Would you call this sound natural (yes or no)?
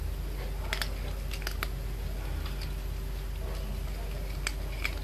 yes